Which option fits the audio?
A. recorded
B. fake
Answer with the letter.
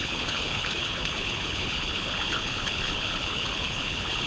B